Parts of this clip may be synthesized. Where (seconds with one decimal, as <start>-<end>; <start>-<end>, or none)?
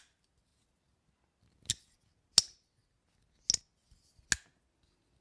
none